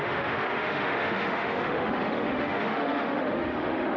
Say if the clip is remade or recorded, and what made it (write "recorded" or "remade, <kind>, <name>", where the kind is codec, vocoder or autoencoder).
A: remade, autoencoder, DAC-VAE